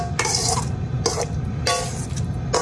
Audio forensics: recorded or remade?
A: recorded